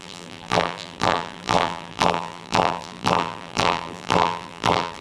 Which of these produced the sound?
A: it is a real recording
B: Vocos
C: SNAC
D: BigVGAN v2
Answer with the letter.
D